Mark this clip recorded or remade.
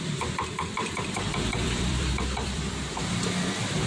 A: remade